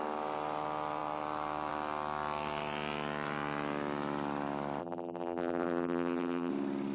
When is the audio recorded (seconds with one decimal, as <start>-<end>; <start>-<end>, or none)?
0.0-4.8; 6.5-6.9